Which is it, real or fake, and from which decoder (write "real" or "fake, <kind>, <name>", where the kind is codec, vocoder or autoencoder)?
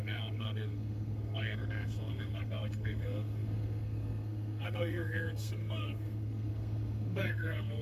fake, codec, SNAC